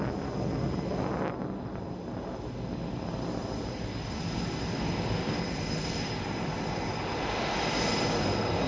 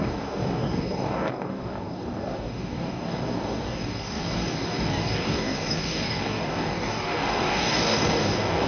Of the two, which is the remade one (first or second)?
second